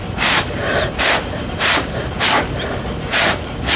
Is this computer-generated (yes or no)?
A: yes